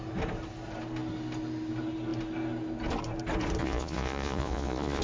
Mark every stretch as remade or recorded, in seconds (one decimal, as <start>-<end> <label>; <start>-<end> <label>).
0.0-3.6 recorded; 3.6-5.0 remade